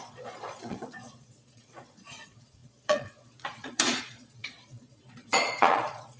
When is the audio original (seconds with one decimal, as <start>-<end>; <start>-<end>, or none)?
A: none